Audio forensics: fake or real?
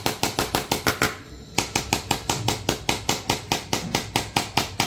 real